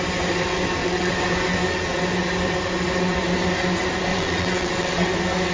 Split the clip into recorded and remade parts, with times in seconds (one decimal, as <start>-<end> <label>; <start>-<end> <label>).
0.0-0.8 recorded; 0.8-1.3 remade; 1.3-4.1 recorded; 4.1-5.1 remade; 5.1-5.5 recorded